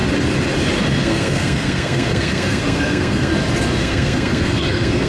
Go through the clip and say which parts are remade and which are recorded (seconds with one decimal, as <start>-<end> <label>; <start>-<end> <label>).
0.0-1.0 recorded; 1.0-3.3 remade; 3.3-3.8 recorded; 3.8-5.1 remade